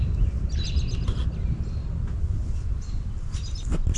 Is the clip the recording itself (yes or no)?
yes